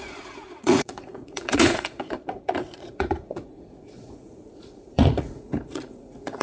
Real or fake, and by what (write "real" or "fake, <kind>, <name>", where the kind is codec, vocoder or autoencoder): fake, vocoder, Vocos